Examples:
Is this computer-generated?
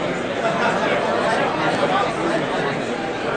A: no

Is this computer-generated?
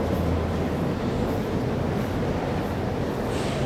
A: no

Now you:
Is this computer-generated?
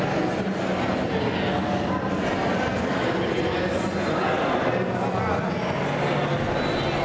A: no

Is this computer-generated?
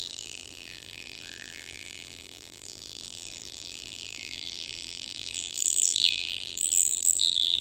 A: yes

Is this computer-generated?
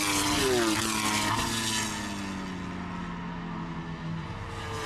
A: no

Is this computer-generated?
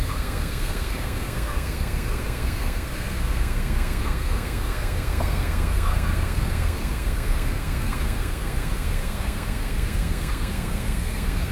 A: yes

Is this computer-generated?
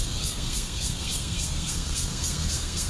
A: yes